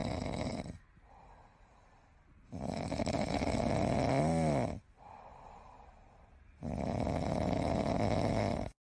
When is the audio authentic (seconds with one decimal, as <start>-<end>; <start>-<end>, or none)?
0.0-8.8